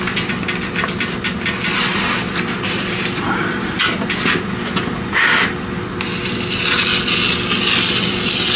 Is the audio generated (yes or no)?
no